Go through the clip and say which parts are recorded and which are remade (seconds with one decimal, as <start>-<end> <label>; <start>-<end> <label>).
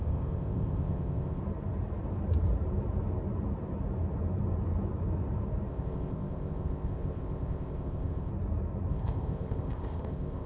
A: 0.0-1.4 remade; 1.4-5.7 recorded; 5.7-8.3 remade; 8.3-8.9 recorded; 8.9-10.5 remade